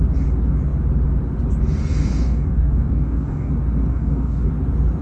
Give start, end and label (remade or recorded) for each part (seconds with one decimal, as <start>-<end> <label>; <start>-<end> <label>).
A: 0.0-2.0 recorded; 2.0-3.5 remade; 3.5-3.9 recorded; 3.9-4.5 remade; 4.5-5.0 recorded